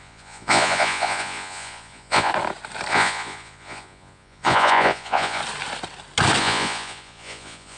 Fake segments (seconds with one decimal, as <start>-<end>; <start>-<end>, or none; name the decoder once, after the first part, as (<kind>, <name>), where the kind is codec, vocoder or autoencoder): 0.0-2.3 (vocoder, Vocos); 2.9-5.4; 6.4-7.8